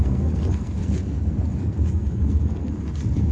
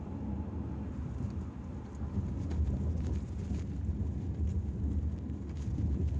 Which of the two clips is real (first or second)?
second